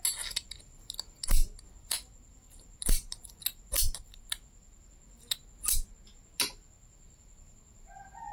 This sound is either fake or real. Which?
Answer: real